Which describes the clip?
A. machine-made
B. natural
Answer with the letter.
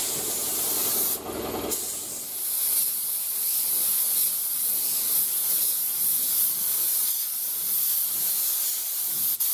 B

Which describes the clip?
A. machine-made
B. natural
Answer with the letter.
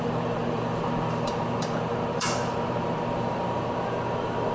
A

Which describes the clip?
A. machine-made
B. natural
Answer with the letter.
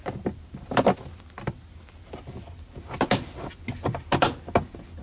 B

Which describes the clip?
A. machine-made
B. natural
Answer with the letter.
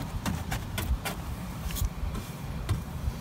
A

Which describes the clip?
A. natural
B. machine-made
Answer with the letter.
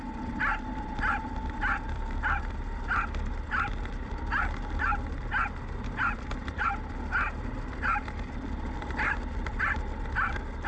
A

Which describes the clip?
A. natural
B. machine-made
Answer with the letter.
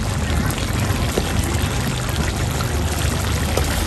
A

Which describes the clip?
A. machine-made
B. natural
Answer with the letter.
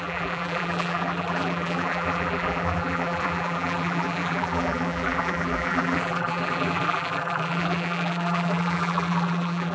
A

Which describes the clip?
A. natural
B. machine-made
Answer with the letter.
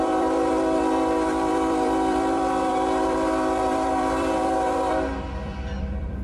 B